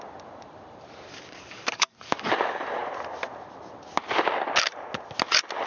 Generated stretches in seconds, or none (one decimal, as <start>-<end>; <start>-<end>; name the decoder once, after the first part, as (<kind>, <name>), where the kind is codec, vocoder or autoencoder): 1.1-2.3 (codec, DAC)